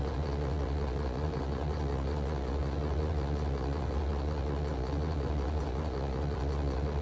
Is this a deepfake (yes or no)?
yes